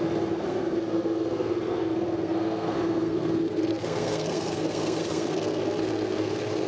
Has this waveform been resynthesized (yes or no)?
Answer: yes